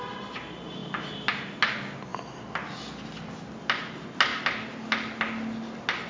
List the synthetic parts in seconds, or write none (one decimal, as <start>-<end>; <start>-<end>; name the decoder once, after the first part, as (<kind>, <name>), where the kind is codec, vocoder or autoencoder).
none